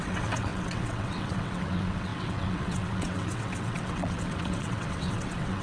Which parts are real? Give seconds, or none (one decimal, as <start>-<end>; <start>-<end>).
none